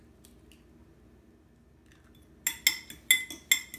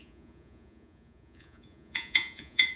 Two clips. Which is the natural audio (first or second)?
first